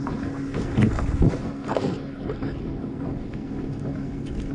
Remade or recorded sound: remade